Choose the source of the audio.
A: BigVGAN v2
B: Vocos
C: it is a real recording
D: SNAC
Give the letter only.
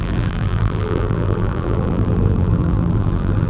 A